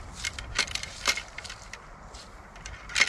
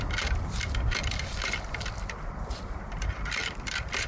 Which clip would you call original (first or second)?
first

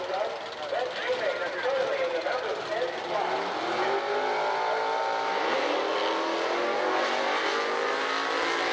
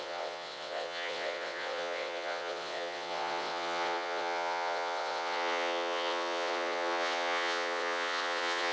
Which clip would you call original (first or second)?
first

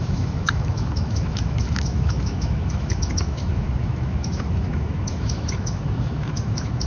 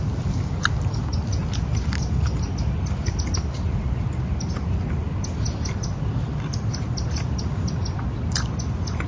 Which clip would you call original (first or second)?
second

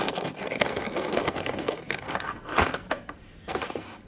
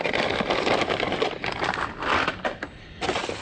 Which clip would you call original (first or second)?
second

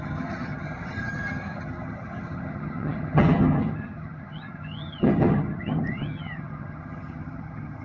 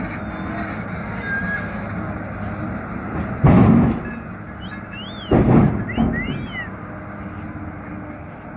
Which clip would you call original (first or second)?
second